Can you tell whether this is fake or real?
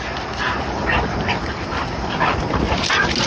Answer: real